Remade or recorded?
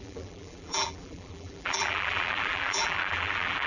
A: remade